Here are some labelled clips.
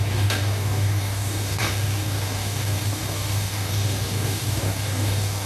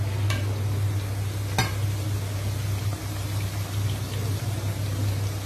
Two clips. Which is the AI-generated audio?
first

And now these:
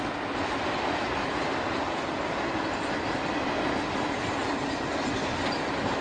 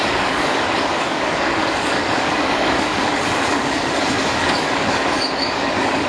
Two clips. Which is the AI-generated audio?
second